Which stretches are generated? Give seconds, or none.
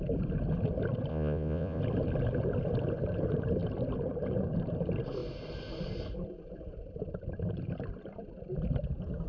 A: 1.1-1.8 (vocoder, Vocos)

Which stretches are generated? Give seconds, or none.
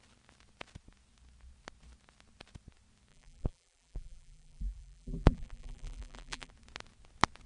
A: 3.1-6.5 (vocoder, BigVGAN v2)